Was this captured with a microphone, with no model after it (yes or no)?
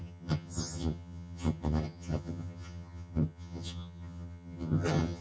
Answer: no